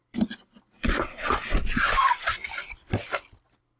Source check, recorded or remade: recorded